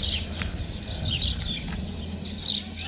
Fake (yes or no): no